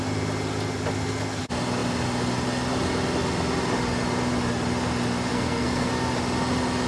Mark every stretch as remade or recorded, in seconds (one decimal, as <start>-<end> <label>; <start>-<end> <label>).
0.0-5.3 recorded; 5.3-5.9 remade; 5.9-6.9 recorded